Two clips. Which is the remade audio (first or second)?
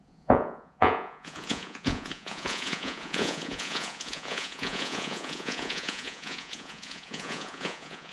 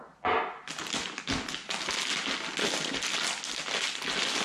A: first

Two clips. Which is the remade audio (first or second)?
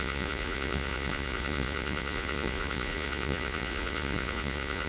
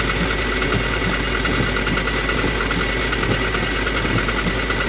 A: first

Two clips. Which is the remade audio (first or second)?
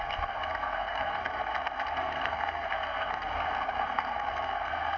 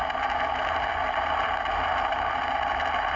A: first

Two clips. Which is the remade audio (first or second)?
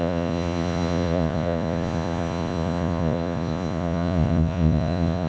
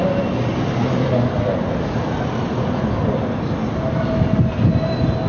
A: first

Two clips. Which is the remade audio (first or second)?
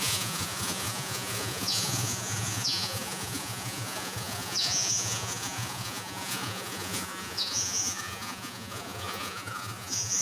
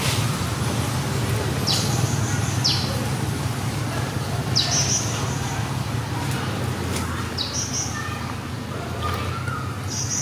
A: first